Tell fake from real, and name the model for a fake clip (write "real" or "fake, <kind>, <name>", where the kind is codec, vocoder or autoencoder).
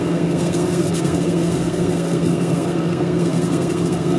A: fake, codec, SNAC